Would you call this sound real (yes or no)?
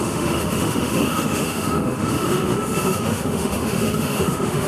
no